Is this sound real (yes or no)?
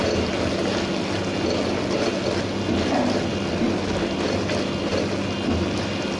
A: yes